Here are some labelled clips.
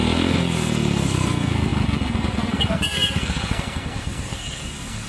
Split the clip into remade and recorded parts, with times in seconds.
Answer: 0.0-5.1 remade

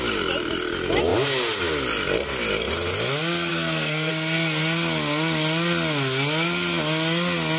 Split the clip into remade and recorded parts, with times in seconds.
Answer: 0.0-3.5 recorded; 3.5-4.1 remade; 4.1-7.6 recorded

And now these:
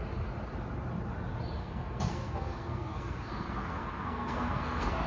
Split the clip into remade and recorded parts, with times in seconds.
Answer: 0.0-1.6 recorded; 1.6-5.1 remade

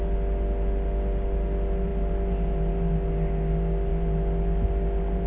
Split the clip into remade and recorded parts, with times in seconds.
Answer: 0.0-5.3 recorded

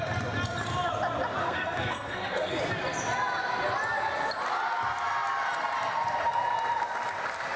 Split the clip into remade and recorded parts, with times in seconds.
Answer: 0.0-1.4 recorded; 1.4-2.6 remade; 2.6-7.6 recorded

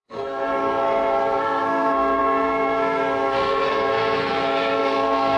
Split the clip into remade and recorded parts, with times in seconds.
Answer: 0.0-5.4 remade